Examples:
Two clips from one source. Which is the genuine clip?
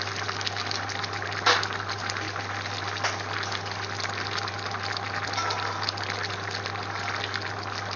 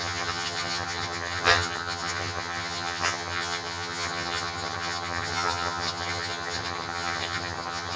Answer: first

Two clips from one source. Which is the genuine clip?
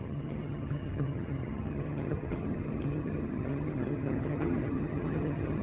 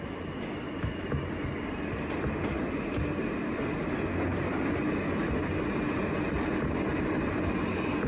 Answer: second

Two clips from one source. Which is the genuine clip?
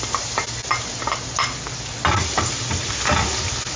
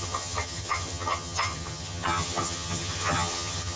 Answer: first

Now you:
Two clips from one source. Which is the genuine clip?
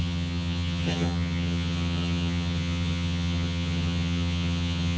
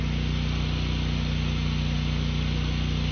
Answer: second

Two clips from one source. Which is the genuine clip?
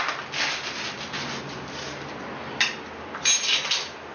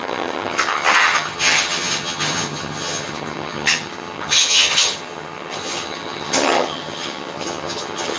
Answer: first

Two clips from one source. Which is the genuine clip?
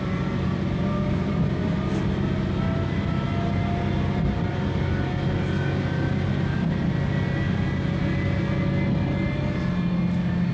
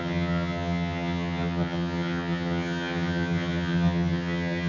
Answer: first